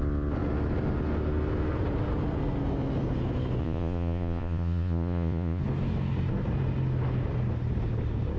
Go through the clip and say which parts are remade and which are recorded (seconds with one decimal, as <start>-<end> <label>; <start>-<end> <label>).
0.0-3.6 recorded; 3.6-5.6 remade; 5.6-8.4 recorded